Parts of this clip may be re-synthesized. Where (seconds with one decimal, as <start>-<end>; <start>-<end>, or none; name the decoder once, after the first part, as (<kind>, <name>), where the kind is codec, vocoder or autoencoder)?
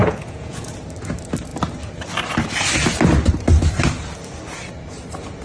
0.0-0.7 (vocoder, Vocos)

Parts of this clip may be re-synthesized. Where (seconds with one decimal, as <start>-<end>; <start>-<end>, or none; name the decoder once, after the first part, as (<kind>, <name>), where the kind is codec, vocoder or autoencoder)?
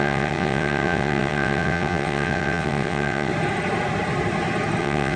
0.0-3.3 (vocoder, WaveNeXt); 4.8-5.2